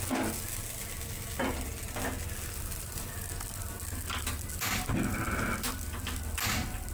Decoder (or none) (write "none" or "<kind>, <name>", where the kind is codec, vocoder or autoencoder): none